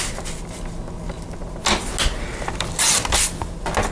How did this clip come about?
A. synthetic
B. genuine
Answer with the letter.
B